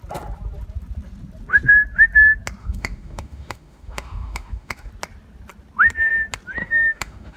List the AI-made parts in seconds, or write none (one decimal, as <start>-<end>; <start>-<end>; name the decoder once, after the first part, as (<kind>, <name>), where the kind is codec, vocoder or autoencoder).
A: 2.6-4.9 (autoencoder, DAC-VAE); 6.6-7.4